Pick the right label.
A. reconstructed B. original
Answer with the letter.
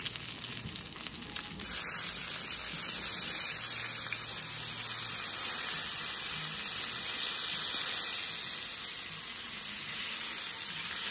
B